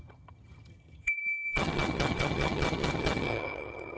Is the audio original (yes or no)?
no